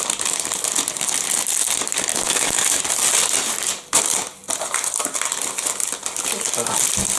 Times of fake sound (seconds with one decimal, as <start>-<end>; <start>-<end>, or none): 2.1-2.8